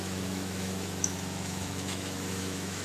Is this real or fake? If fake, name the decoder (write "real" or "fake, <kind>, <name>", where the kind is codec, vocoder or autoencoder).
fake, autoencoder, DAC-VAE